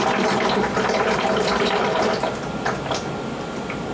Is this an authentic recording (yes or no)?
yes